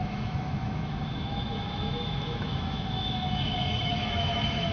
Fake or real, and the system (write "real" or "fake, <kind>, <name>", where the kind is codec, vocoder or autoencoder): fake, autoencoder, DAC-VAE